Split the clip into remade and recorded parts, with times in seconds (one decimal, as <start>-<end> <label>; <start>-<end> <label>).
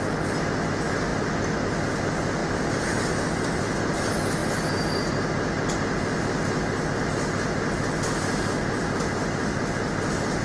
0.0-2.4 recorded; 2.4-3.8 remade; 3.8-10.4 recorded